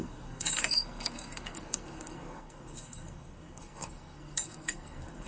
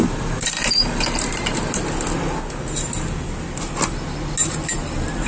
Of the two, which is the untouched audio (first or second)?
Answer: second